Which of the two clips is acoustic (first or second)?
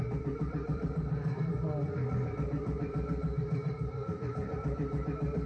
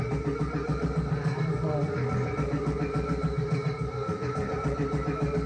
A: second